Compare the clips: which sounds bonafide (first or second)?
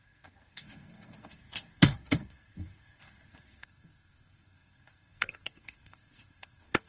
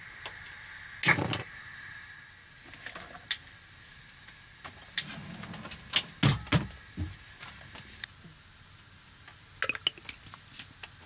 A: second